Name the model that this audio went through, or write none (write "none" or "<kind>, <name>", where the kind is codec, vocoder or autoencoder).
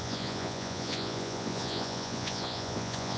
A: vocoder, Vocos